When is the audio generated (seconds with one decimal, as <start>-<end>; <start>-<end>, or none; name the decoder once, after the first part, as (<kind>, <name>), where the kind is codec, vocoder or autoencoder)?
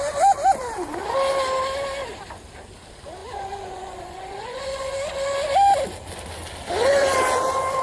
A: 3.2-4.9 (vocoder, Vocos)